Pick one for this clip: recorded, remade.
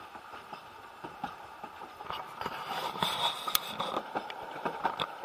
remade